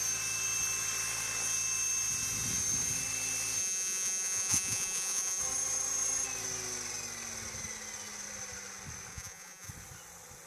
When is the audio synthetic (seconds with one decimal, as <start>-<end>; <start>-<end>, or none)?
3.6-5.4; 9.1-9.7